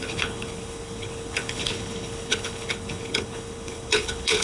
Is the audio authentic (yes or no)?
no